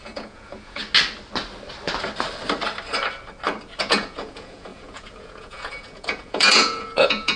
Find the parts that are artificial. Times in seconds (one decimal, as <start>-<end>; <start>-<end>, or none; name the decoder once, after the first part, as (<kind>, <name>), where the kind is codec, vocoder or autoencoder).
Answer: 0.0-0.8 (vocoder, Vocos); 3.8-7.4